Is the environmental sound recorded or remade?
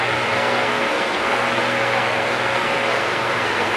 remade